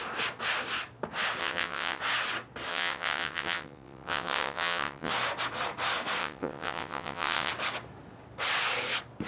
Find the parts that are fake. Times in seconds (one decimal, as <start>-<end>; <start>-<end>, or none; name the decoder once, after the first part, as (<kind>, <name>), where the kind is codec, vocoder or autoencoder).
1.4-2.0 (vocoder, WaveNeXt); 2.7-5.1; 6.2-7.5